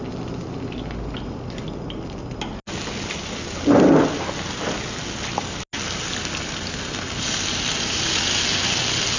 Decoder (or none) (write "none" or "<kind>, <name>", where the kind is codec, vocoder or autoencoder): none